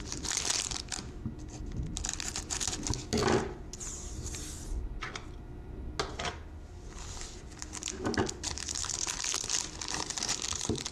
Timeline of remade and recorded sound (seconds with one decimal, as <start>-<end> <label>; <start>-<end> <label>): 0.0-8.8 recorded; 8.8-9.5 remade; 9.5-10.9 recorded